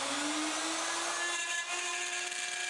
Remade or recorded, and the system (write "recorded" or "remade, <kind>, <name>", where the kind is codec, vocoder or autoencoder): recorded